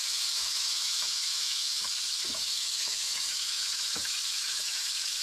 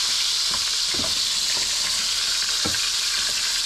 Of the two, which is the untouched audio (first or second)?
second